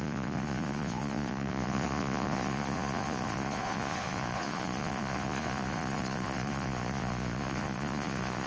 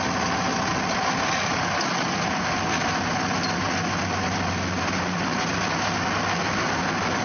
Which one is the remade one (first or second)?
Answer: first